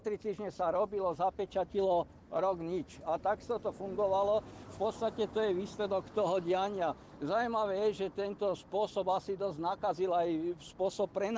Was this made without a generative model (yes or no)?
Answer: yes